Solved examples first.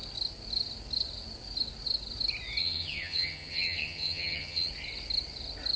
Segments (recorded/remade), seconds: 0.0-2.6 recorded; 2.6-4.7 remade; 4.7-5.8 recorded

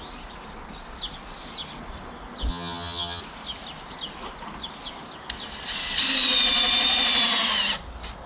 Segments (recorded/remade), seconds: 0.0-2.5 recorded; 2.5-3.2 remade; 3.2-8.3 recorded

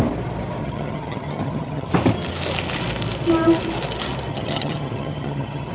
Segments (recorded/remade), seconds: 0.0-0.6 recorded; 0.6-1.9 remade; 1.9-4.3 recorded; 4.3-5.7 remade